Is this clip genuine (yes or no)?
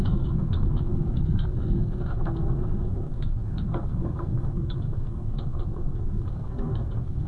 no